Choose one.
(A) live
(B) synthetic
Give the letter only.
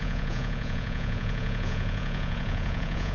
B